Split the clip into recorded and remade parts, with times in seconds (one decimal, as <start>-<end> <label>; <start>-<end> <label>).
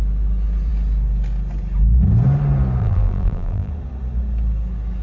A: 0.0-2.8 recorded; 2.8-3.7 remade; 3.7-5.0 recorded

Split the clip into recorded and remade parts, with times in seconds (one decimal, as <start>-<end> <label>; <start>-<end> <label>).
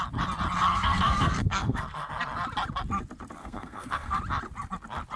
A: 0.0-0.7 recorded; 0.7-2.1 remade; 2.1-3.4 recorded; 3.4-4.2 remade; 4.2-5.2 recorded